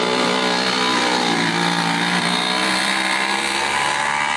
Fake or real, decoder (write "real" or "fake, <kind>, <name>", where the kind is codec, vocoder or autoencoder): fake, vocoder, BigVGAN v2